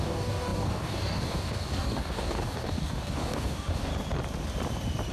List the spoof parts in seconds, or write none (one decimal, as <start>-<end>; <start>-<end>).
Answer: 0.0-3.9